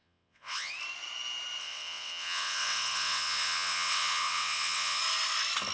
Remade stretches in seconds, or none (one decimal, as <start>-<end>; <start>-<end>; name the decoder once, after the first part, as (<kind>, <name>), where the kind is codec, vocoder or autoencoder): 0.0-0.7 (vocoder, WaveNeXt); 1.6-5.0